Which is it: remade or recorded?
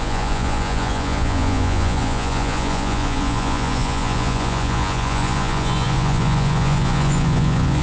remade